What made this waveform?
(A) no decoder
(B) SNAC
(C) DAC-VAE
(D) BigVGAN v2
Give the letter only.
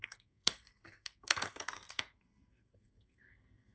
B